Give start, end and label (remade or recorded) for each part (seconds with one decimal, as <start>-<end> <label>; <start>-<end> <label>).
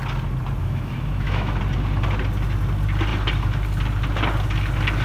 0.0-0.6 recorded; 0.6-1.6 remade; 1.6-5.0 recorded